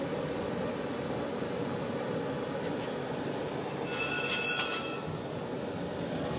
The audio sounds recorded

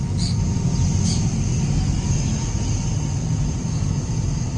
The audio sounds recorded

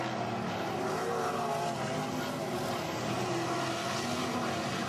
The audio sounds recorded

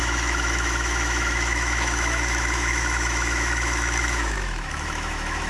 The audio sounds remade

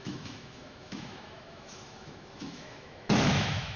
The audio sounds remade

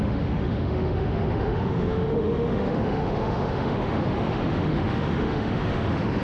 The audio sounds remade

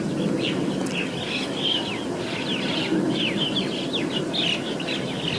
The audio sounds recorded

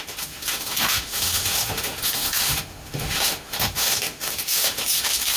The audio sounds remade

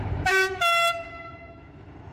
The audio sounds remade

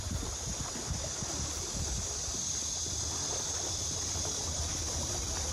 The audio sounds recorded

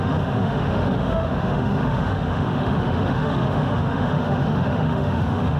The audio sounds remade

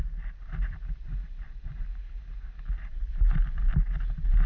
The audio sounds recorded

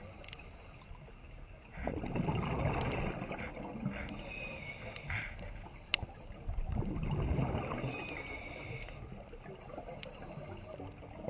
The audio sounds recorded